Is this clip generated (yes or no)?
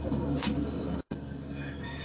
yes